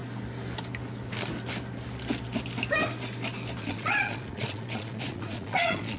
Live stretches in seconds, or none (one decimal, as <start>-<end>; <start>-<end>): 0.0-3.6